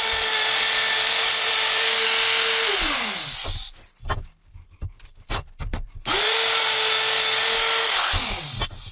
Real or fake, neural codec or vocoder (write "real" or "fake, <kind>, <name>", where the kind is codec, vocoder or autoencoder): real